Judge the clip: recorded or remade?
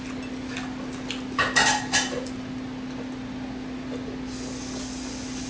recorded